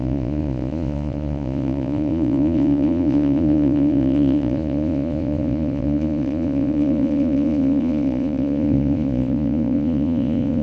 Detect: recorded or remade remade